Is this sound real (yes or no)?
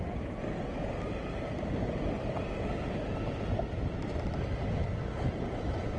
yes